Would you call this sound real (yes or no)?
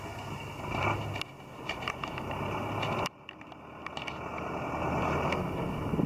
yes